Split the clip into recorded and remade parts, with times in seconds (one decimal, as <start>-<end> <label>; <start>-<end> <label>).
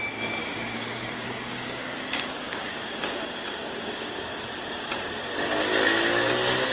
0.0-0.4 recorded; 0.4-4.4 remade; 4.4-6.7 recorded